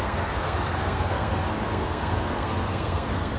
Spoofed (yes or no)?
yes